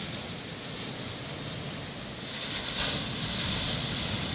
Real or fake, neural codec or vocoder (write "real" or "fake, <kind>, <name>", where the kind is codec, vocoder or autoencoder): real